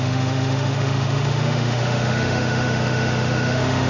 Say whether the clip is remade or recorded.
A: remade